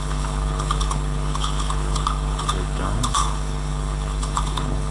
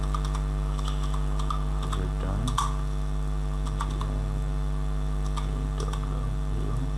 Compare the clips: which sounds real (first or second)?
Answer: second